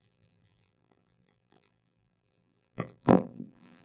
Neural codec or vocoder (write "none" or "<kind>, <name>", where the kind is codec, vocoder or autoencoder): vocoder, BigVGAN v2